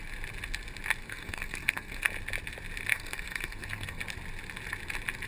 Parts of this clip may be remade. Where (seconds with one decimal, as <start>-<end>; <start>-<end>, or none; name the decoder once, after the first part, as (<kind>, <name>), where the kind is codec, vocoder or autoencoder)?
1.0-2.1 (codec, SNAC); 2.9-4.0